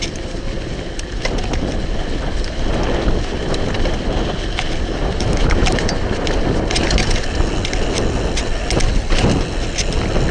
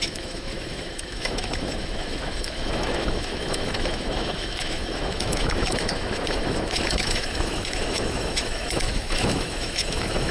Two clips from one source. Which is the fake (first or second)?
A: second